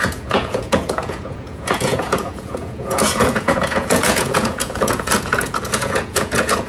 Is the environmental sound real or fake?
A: fake